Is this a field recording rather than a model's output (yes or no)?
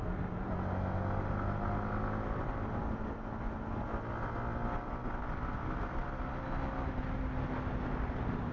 yes